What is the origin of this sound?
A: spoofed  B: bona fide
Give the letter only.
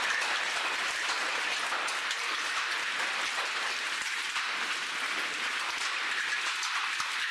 B